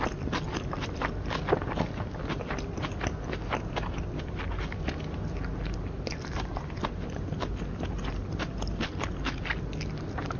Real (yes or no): yes